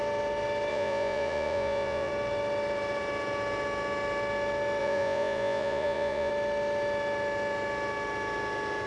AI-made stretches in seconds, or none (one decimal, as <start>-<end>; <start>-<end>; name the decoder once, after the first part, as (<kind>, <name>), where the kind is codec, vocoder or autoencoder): 0.7-2.1 (vocoder, Vocos); 4.8-6.3